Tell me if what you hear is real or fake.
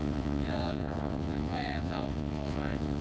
fake